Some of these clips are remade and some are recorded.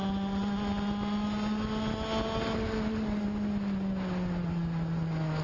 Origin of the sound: recorded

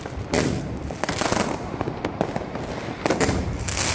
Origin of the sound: recorded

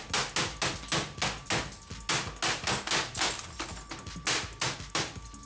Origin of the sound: recorded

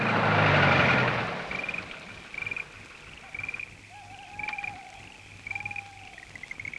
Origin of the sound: recorded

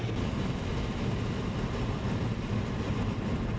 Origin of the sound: recorded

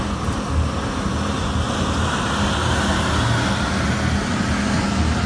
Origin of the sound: recorded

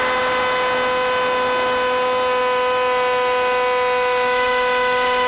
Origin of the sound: recorded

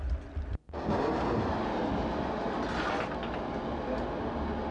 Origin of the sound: recorded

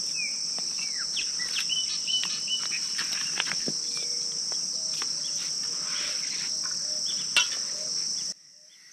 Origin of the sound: recorded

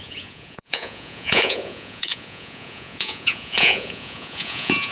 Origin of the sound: remade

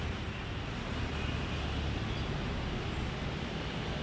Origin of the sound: recorded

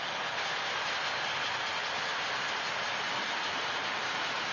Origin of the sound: recorded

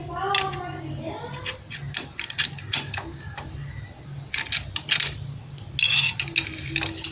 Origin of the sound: recorded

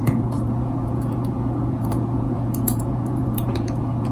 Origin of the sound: remade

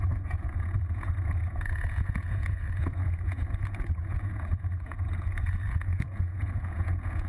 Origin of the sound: remade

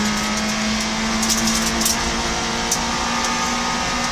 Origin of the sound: recorded